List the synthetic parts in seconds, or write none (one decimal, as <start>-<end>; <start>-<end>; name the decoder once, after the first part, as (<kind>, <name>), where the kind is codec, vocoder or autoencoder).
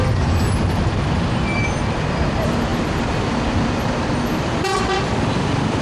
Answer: none